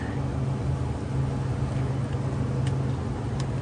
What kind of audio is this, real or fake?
real